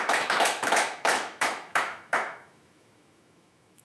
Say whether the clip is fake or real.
fake